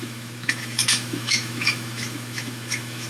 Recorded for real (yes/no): no